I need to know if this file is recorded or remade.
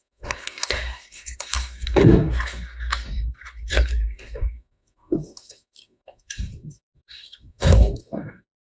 remade